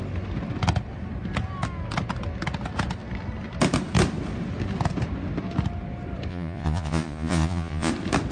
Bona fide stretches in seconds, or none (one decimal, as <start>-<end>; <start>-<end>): 0.0-6.3; 7.9-8.3